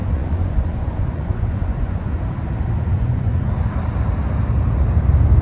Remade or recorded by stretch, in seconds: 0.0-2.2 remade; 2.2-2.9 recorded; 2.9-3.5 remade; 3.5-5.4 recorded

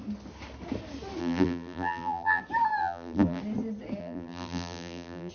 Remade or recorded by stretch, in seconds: 0.0-1.2 recorded; 1.2-2.4 remade; 2.4-2.8 recorded; 2.8-3.4 remade; 3.4-4.0 recorded; 4.0-5.3 remade

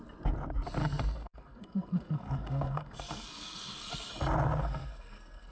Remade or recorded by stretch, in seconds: 0.0-0.8 recorded; 0.8-4.1 remade; 4.1-4.6 recorded; 4.6-5.5 remade

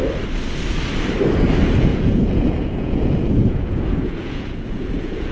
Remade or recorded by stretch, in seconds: 0.0-1.9 recorded; 1.9-5.3 remade

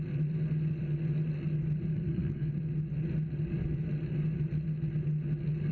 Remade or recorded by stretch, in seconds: 0.0-1.9 recorded; 1.9-2.5 remade; 2.5-5.7 recorded

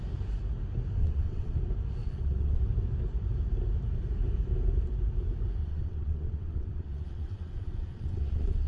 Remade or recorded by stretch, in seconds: 0.0-1.0 recorded; 1.0-1.6 remade; 1.6-2.0 recorded; 2.0-2.6 remade; 2.6-5.6 recorded; 5.6-8.7 remade

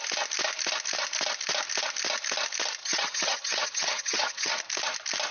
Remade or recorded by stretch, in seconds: 0.0-2.8 recorded; 2.8-4.5 remade; 4.5-5.3 recorded

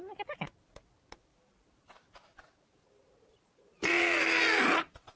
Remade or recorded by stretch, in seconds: 0.0-1.3 recorded; 1.3-4.4 remade; 4.4-5.2 recorded